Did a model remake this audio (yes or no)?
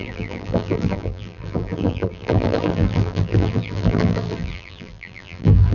yes